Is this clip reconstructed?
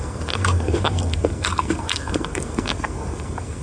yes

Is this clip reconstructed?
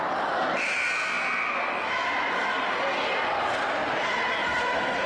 no